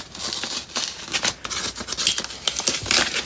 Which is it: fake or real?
real